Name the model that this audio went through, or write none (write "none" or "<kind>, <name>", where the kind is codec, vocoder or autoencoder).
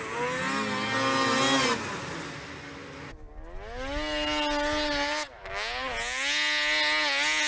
none